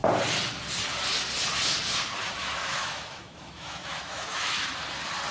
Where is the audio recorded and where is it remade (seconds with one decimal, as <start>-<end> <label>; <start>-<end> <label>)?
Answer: 0.0-2.4 recorded; 2.4-4.7 remade; 4.7-5.3 recorded